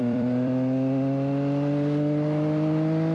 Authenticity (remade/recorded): remade